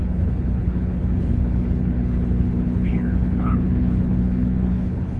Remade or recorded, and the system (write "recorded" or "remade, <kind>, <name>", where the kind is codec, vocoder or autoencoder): remade, codec, HILCodec